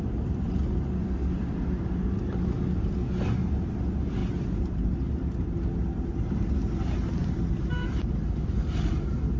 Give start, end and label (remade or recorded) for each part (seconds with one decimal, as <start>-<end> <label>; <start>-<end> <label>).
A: 0.0-4.2 recorded; 4.2-4.9 remade; 4.9-9.4 recorded